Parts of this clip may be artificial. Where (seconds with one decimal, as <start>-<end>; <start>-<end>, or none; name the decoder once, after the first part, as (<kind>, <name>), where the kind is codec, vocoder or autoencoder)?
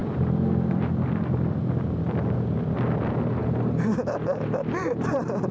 0.0-0.9 (vocoder, BigVGAN v2); 3.4-5.5